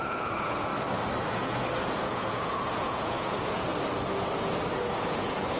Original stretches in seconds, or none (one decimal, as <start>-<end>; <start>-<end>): 0.7-1.3; 3.7-4.7